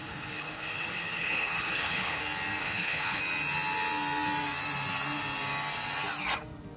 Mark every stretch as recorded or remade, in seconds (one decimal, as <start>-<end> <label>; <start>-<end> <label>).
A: 0.0-2.2 remade; 2.2-2.6 recorded; 2.6-3.2 remade; 3.2-6.8 recorded